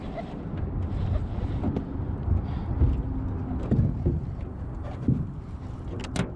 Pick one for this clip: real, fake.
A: real